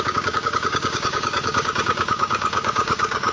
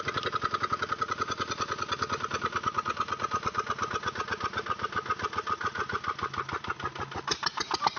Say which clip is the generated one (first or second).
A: first